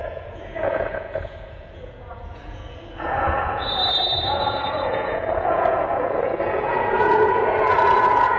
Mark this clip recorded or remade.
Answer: remade